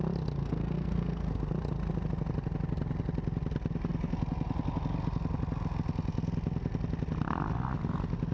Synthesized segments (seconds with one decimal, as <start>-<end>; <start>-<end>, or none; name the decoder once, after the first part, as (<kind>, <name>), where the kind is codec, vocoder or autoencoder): 0.4-1.5 (codec, SNAC)